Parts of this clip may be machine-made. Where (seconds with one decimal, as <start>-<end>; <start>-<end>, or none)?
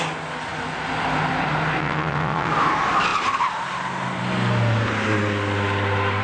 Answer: 1.8-2.5